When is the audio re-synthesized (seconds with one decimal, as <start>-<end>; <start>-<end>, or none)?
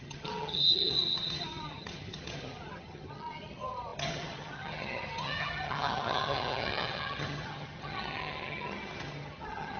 0.0-9.8